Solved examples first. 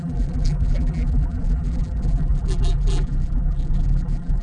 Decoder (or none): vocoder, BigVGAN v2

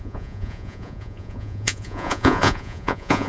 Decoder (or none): vocoder, Vocos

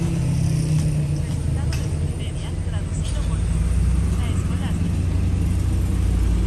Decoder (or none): none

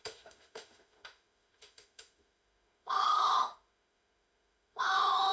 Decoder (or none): autoencoder, DAC-VAE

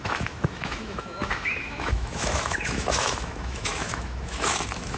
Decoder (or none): autoencoder, DAC-VAE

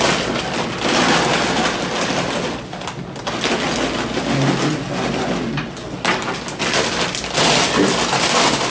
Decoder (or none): none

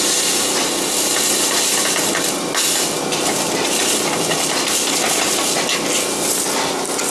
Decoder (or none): none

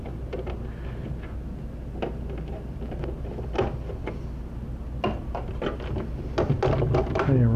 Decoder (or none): none